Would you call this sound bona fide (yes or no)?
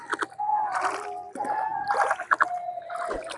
yes